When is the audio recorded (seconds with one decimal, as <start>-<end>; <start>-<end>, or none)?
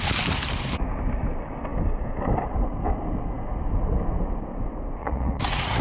0.0-5.0